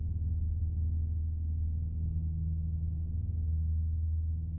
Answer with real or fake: real